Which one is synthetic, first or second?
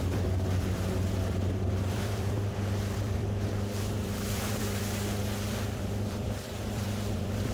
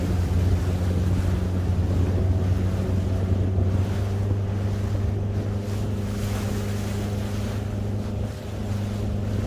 first